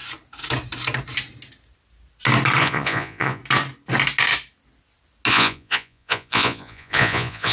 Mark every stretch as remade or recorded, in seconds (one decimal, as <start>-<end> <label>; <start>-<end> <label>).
0.0-2.6 recorded; 2.6-3.4 remade; 3.4-5.3 recorded; 5.3-7.5 remade